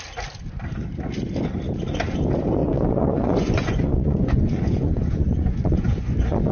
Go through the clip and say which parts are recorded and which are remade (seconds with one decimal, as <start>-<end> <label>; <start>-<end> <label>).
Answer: 0.0-2.6 recorded; 2.6-6.5 remade